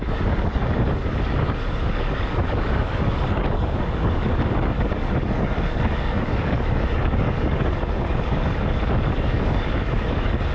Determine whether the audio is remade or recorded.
remade